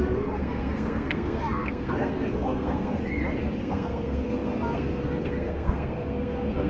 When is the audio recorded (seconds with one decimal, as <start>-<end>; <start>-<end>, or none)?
3.0-3.6